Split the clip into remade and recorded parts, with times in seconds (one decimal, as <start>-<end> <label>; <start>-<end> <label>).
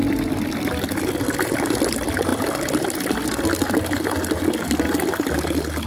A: 0.0-5.9 recorded